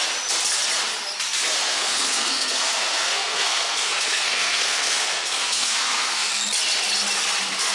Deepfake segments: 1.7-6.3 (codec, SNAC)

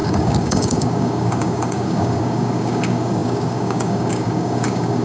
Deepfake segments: 0.0-5.0 (codec, DAC)